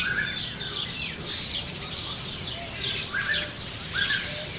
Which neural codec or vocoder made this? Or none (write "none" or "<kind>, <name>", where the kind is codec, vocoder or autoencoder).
vocoder, BigVGAN v2